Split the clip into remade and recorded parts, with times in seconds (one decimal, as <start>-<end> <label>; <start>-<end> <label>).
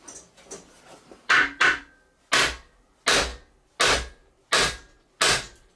0.0-5.8 recorded